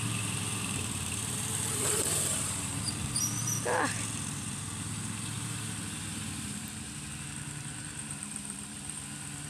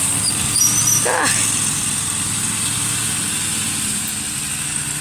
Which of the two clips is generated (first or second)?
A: first